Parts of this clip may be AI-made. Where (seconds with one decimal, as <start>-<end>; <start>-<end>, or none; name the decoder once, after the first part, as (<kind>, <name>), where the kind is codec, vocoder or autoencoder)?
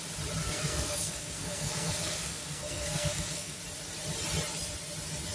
0.4-3.6 (codec, SNAC)